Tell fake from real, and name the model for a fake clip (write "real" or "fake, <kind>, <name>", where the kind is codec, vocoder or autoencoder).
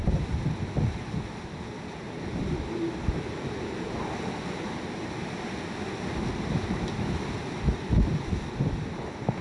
real